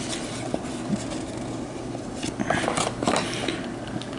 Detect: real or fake real